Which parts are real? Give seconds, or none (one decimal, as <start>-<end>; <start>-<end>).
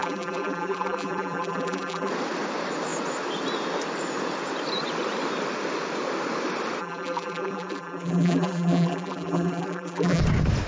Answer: 2.1-6.8; 10.2-10.7